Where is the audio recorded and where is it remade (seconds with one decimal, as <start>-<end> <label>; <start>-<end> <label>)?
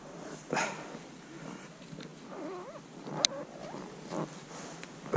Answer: 0.0-5.2 recorded